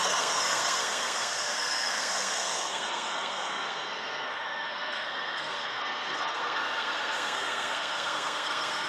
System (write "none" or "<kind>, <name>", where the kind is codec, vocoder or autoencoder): codec, SNAC